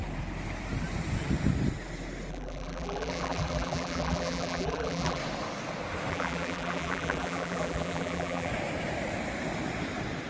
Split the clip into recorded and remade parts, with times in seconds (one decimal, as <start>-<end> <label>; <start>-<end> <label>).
0.0-2.3 recorded; 2.3-5.2 remade; 5.2-6.1 recorded; 6.1-8.5 remade; 8.5-10.3 recorded